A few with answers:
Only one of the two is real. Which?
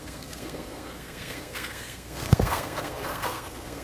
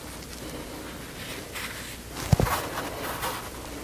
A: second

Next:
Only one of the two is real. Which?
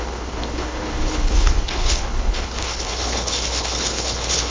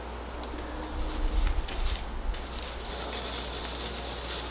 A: second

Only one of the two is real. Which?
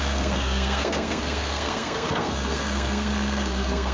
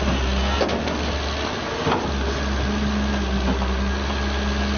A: second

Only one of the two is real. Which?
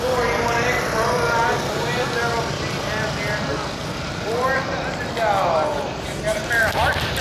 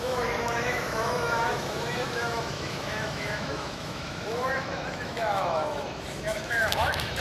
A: first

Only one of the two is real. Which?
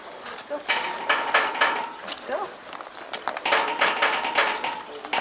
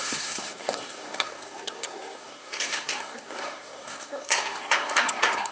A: first